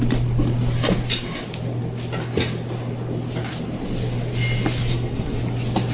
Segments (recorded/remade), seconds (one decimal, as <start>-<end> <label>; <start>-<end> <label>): 0.0-4.8 recorded; 4.8-5.4 remade; 5.4-5.9 recorded